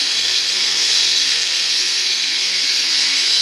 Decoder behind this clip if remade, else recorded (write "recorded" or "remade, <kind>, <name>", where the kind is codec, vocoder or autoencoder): remade, codec, SNAC